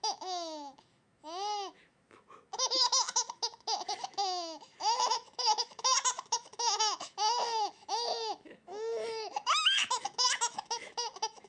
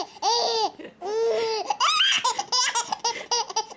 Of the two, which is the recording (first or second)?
second